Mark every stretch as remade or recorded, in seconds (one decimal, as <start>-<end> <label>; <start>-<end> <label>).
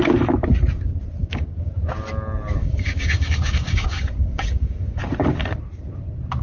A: 0.0-1.2 recorded; 1.2-1.7 remade; 1.7-2.6 recorded; 2.6-5.0 remade; 5.0-6.4 recorded